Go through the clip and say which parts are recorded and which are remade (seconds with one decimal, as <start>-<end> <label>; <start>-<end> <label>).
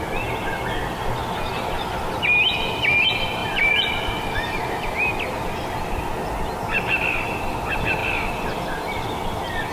0.0-3.4 recorded; 3.4-6.0 remade; 6.0-8.0 recorded; 8.0-9.0 remade; 9.0-9.7 recorded